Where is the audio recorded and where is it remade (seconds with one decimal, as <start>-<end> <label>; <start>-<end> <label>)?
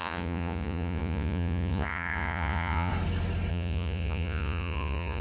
0.0-2.9 remade; 2.9-3.5 recorded; 3.5-5.2 remade